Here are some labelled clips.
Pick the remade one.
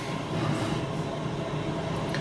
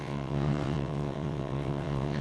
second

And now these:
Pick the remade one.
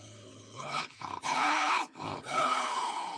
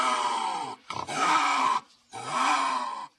first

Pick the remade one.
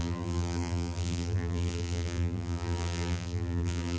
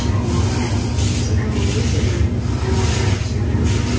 first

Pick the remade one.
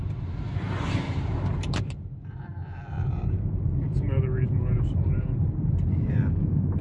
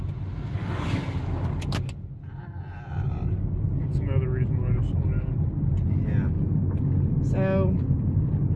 first